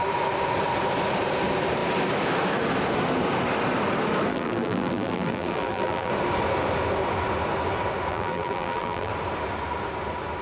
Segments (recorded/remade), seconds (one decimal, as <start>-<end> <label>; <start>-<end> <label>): 0.0-4.3 recorded; 4.3-6.1 remade; 6.1-8.1 recorded; 8.1-9.1 remade; 9.1-10.4 recorded